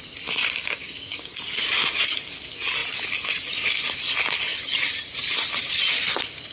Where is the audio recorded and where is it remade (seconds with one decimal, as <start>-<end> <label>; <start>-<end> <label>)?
0.0-0.6 recorded; 0.6-1.3 remade; 1.3-6.5 recorded